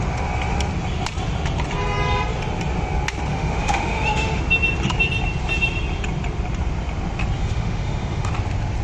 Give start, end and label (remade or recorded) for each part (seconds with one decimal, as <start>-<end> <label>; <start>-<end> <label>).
0.0-3.3 recorded; 3.3-4.4 remade; 4.4-7.4 recorded; 7.4-8.3 remade; 8.3-8.8 recorded